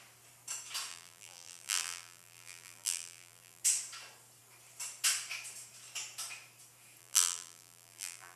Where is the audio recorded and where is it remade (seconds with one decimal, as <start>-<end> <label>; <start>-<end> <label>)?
0.0-0.9 recorded; 0.9-3.6 remade; 3.6-7.0 recorded; 7.0-8.4 remade